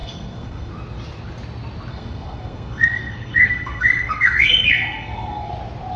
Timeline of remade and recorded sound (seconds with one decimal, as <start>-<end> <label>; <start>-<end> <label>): 0.0-0.7 remade; 0.7-1.9 recorded; 1.9-5.5 remade; 5.5-6.0 recorded